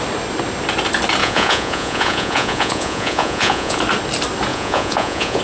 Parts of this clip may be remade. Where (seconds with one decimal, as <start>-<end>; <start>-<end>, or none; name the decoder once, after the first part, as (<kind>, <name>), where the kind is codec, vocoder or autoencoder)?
1.2-3.8 (vocoder, Vocos); 4.5-5.4